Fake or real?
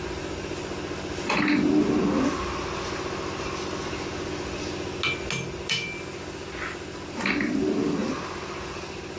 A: real